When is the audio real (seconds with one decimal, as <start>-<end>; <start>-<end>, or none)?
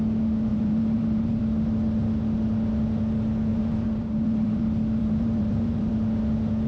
0.0-0.5; 1.4-3.5; 4.6-5.0; 5.9-6.7